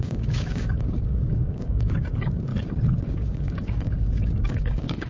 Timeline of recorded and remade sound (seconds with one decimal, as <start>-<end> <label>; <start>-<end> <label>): 0.0-2.5 remade; 2.5-3.1 recorded; 3.1-5.1 remade